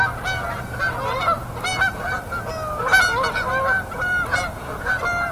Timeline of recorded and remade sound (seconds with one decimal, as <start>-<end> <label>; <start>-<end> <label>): 0.0-5.3 recorded